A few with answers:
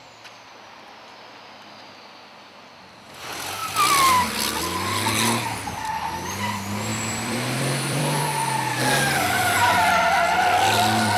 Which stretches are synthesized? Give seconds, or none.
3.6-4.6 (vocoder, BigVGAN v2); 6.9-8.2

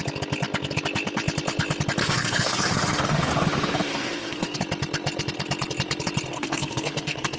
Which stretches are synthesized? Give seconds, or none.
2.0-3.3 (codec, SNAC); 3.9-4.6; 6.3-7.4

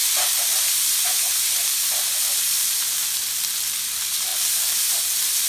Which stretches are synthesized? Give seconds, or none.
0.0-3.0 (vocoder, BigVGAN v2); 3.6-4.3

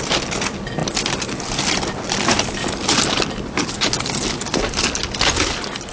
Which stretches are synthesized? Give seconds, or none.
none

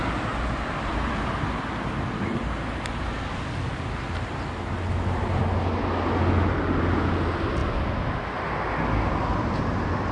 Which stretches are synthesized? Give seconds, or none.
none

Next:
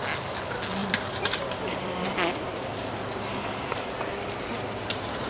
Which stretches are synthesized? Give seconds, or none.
0.8-2.5 (vocoder, BigVGAN v2)